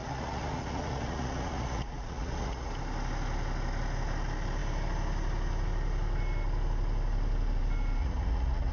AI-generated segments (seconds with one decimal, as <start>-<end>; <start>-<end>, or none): 0.0-2.7; 8.0-8.7